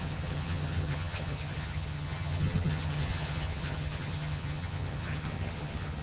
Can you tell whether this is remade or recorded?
remade